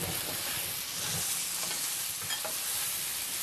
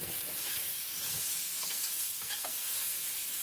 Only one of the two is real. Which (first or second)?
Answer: first